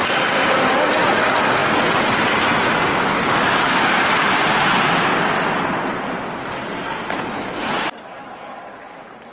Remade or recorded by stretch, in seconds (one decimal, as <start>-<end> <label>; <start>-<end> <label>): 0.0-4.2 recorded; 4.2-4.8 remade; 4.8-9.3 recorded